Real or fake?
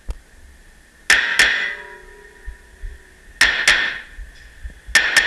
real